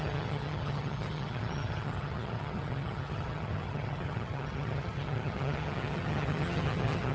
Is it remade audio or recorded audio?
remade